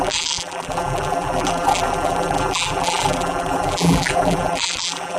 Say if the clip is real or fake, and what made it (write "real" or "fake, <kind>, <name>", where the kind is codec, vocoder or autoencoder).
fake, vocoder, BigVGAN v2